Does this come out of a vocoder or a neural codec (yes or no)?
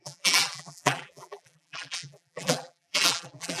yes